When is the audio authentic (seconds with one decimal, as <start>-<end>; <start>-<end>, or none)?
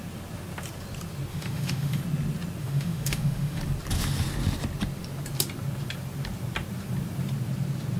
0.0-1.3; 2.0-2.6; 3.6-8.0